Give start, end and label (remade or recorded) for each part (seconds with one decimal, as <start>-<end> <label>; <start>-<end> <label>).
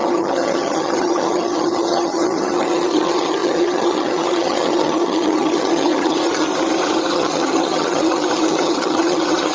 0.0-6.5 remade; 6.5-7.1 recorded; 7.1-9.5 remade